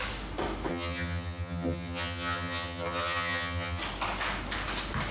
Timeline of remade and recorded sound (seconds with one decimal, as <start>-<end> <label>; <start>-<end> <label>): 0.0-0.7 recorded; 0.7-3.8 remade; 3.8-5.1 recorded